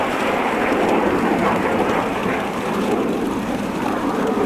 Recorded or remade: remade